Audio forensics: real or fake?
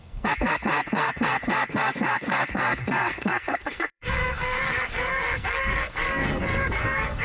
fake